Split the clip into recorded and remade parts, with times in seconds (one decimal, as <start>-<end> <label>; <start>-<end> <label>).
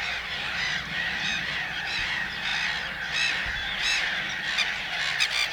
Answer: 0.0-2.5 remade; 2.5-3.5 recorded; 3.5-4.1 remade; 4.1-5.5 recorded